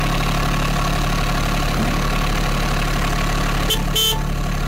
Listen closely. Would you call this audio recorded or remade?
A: recorded